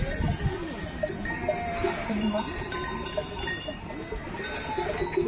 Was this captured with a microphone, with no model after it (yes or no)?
yes